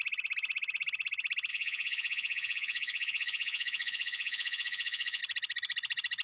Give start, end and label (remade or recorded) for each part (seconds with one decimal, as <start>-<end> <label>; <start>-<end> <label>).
0.0-1.5 recorded; 1.5-5.2 remade; 5.2-6.2 recorded